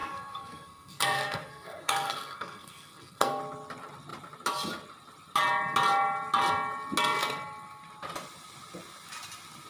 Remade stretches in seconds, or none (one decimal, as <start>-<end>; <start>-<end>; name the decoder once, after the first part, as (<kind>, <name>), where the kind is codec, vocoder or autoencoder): 0.0-3.4 (codec, SNAC)